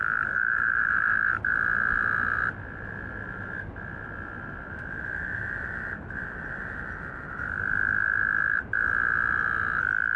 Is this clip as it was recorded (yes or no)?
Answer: yes